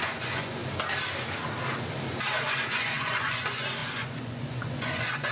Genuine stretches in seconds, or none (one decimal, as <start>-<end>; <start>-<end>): 0.6-2.4